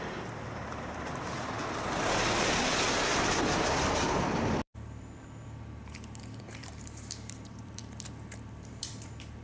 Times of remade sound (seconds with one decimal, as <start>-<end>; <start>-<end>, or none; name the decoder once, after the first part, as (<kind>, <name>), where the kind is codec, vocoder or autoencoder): 0.0-9.4 (vocoder, BigVGAN v2)